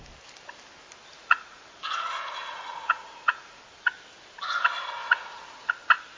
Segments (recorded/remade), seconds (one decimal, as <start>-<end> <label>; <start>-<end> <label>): 0.0-1.1 recorded; 1.1-1.6 remade; 1.6-2.4 recorded; 2.4-3.6 remade; 3.6-5.0 recorded; 5.0-5.7 remade; 5.7-6.2 recorded